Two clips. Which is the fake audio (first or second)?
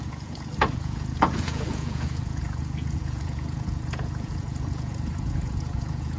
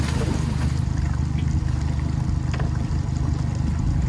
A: first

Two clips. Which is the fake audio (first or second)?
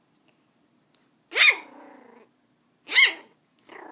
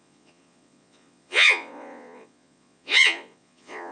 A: second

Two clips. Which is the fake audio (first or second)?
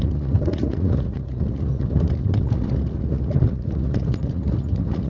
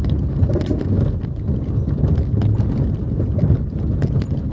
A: first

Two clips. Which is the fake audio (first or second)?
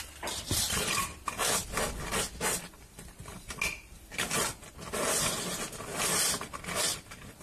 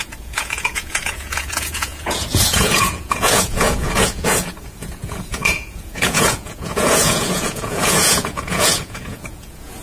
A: second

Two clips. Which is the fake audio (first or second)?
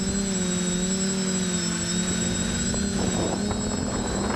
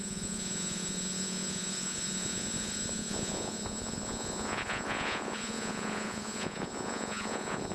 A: second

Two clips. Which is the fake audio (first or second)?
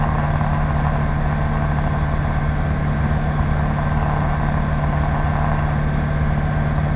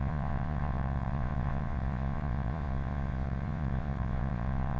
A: second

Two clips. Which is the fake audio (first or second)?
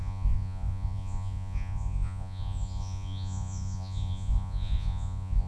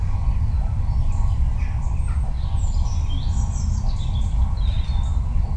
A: first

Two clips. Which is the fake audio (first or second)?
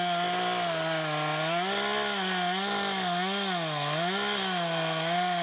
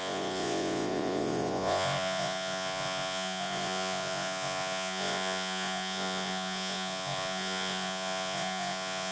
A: second